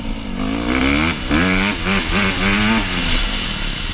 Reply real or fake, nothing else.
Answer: real